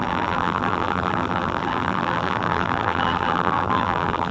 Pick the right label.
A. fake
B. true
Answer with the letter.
A